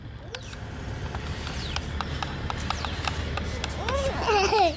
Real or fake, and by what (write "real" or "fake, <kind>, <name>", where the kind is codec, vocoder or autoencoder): real